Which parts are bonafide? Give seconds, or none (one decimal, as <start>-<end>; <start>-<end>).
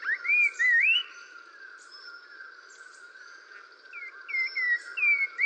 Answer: 0.0-5.5